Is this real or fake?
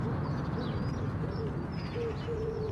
fake